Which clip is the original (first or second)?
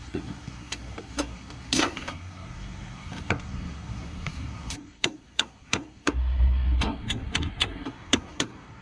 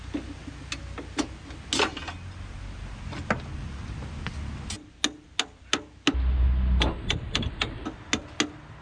second